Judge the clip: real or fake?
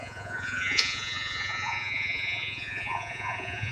fake